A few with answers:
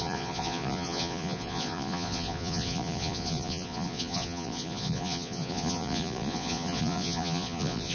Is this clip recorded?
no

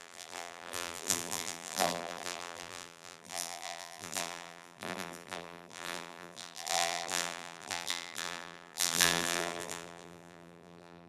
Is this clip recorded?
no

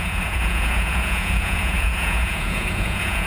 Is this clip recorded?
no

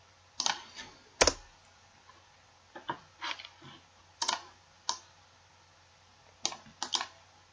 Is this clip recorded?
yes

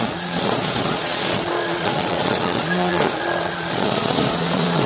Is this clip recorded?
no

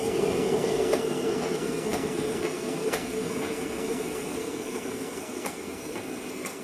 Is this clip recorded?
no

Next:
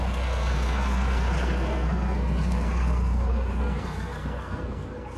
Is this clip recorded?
no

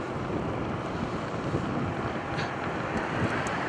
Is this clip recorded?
yes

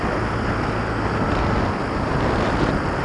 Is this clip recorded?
yes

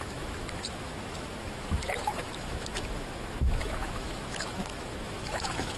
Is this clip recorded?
no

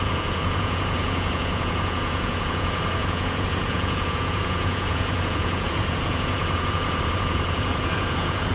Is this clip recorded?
no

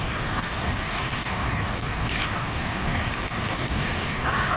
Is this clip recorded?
no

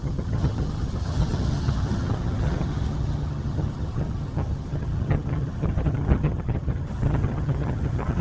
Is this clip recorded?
no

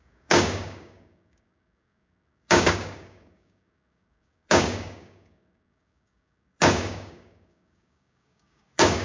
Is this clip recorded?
no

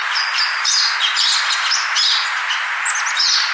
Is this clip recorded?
yes